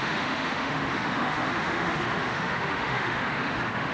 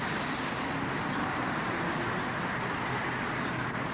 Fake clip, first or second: first